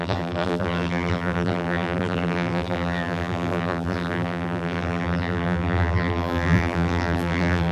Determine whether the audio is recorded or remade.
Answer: remade